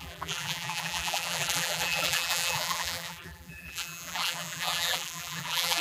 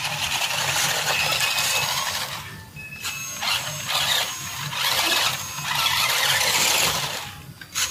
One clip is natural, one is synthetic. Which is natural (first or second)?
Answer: second